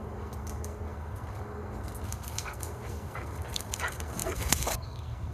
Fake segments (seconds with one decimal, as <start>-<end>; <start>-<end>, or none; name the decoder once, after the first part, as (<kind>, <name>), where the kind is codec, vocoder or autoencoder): 0.0-5.3 (codec, SNAC)